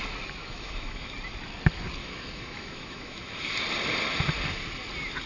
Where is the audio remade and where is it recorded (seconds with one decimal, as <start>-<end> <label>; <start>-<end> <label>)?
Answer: 0.0-0.4 recorded; 0.4-1.1 remade; 1.1-2.0 recorded; 2.0-3.5 remade; 3.5-5.3 recorded